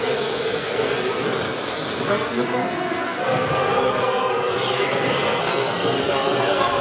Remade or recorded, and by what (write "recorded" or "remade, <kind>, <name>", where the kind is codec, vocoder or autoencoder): remade, codec, SNAC